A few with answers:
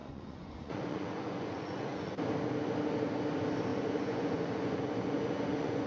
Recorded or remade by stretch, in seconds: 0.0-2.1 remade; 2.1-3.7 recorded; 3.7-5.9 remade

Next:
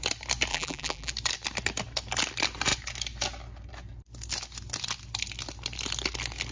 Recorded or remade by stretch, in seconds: 0.0-0.5 recorded; 0.5-1.1 remade; 1.1-6.5 recorded

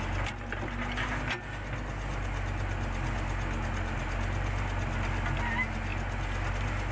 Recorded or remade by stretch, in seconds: 0.0-6.9 recorded

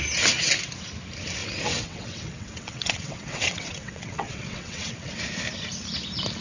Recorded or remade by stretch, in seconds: 0.0-1.4 recorded; 1.4-5.2 remade; 5.2-6.4 recorded

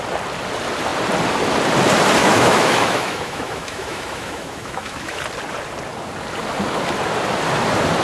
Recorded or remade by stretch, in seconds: 0.0-2.2 recorded; 2.2-5.2 remade; 5.2-8.0 recorded

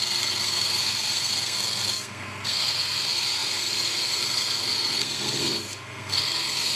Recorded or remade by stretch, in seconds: 0.0-6.8 remade